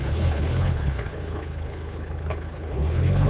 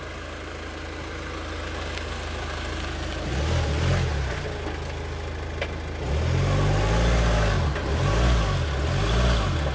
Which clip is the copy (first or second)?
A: first